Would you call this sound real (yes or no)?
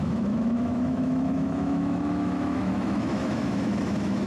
no